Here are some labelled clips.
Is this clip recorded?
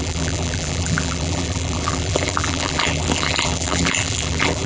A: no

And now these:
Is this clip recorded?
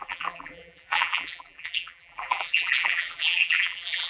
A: no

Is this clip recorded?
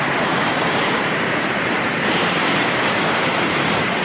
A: no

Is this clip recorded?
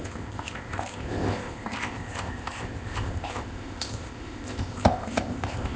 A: no